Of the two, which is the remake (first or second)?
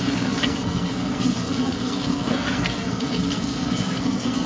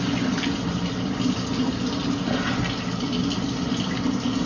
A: first